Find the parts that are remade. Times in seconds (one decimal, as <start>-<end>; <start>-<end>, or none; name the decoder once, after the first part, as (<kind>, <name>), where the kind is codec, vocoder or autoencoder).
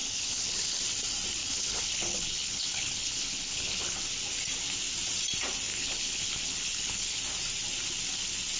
0.0-0.8 (codec, HILCodec); 1.4-4.0; 5.7-7.2